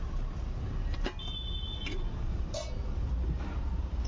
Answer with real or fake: real